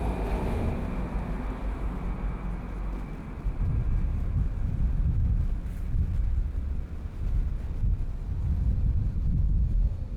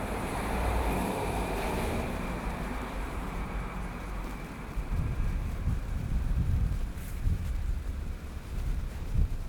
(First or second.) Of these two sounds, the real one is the first